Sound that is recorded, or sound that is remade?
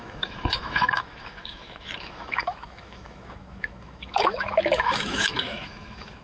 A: remade